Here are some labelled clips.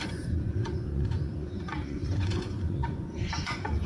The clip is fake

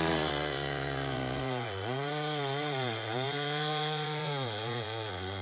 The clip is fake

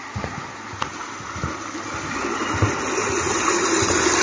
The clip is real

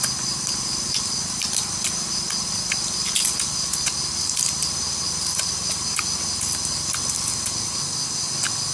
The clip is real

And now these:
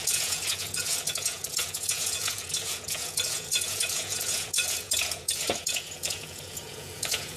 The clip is fake